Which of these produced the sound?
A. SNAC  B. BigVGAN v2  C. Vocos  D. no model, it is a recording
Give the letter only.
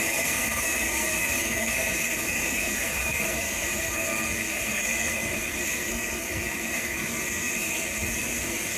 A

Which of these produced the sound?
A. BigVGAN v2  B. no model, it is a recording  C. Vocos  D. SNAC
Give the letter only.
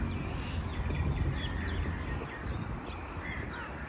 B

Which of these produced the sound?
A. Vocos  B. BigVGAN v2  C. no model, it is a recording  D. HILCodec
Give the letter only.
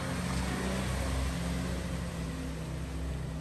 C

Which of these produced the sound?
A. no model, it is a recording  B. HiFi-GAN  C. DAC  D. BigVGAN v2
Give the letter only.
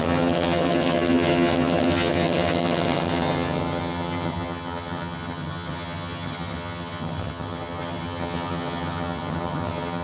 B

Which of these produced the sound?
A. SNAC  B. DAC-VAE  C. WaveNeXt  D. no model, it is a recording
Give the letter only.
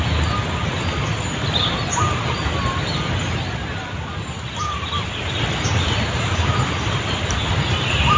D